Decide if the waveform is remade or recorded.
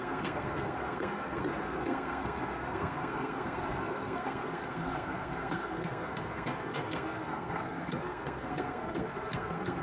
remade